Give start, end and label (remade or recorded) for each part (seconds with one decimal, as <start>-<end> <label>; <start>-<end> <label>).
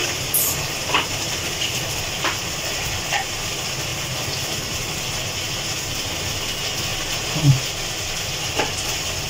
0.0-2.0 remade; 2.0-3.9 recorded; 3.9-4.9 remade; 4.9-9.3 recorded